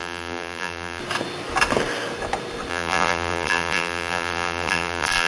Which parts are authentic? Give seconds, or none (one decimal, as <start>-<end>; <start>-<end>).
1.0-2.7